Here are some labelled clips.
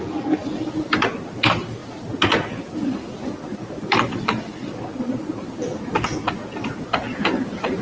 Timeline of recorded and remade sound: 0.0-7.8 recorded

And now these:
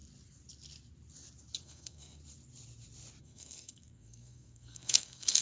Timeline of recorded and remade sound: 0.0-1.6 recorded; 1.6-2.2 remade; 2.2-3.2 recorded; 3.2-5.4 remade

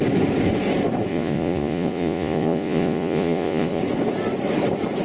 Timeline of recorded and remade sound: 0.0-1.1 recorded; 1.1-3.8 remade; 3.8-5.0 recorded

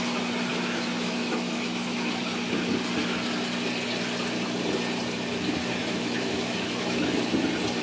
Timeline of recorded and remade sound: 0.0-0.5 recorded; 0.5-2.7 remade; 2.7-5.8 recorded; 5.8-7.2 remade; 7.2-7.8 recorded

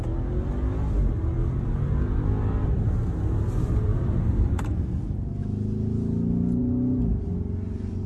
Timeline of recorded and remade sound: 0.0-3.9 recorded; 3.9-5.4 remade; 5.4-8.1 recorded

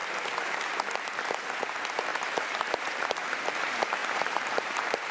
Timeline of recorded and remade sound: 0.0-2.1 recorded; 2.1-3.5 remade; 3.5-4.0 recorded; 4.0-5.1 remade

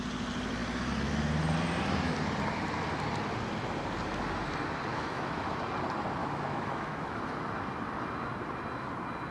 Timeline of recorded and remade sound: 0.0-4.9 recorded; 4.9-5.4 remade; 5.4-6.2 recorded; 6.2-7.2 remade; 7.2-9.3 recorded

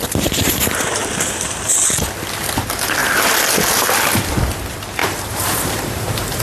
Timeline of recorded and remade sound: 0.0-5.0 recorded; 5.0-6.4 remade